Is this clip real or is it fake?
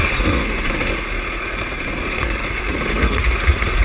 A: fake